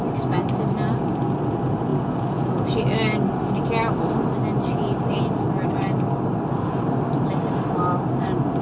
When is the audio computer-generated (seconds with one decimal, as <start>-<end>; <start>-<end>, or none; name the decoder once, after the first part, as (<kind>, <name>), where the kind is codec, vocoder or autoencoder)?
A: 1.9-2.7 (vocoder, Vocos)